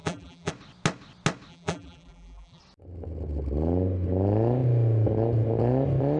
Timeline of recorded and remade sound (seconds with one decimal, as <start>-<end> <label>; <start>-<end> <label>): 0.0-0.5 remade; 0.5-1.5 recorded; 1.5-2.6 remade; 2.6-6.2 recorded